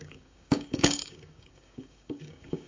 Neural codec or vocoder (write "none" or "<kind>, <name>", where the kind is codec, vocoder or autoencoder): codec, DAC